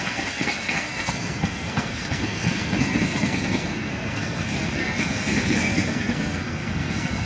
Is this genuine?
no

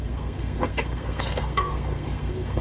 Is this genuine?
no